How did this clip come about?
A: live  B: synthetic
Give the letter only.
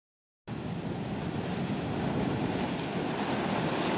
A